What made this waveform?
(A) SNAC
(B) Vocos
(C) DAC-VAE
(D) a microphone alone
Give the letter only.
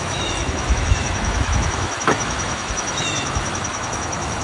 C